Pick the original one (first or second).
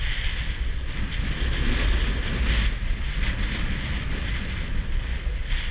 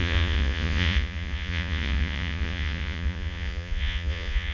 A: first